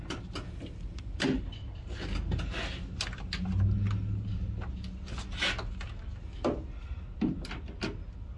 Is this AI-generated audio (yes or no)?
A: no